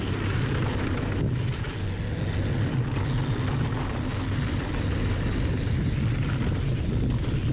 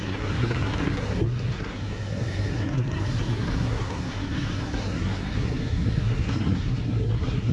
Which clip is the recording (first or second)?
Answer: first